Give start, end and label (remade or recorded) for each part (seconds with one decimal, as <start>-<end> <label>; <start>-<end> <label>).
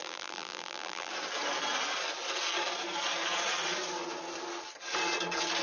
0.0-1.1 remade; 1.1-5.6 recorded